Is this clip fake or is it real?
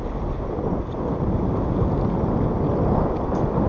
real